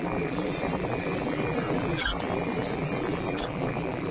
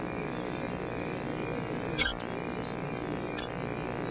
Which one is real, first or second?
second